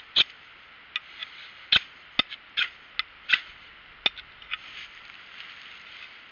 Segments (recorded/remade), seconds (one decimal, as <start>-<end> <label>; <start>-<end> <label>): 0.0-6.3 recorded

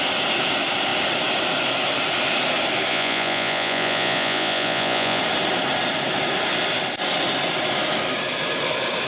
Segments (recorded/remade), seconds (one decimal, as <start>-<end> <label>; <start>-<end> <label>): 0.0-2.9 recorded; 2.9-5.2 remade; 5.2-9.1 recorded